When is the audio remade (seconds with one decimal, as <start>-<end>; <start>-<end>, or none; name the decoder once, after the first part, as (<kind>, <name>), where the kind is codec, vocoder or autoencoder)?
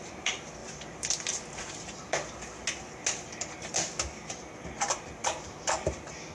none